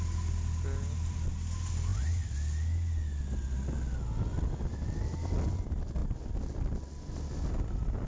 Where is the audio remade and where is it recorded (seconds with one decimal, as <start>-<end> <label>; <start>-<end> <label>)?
0.0-8.1 recorded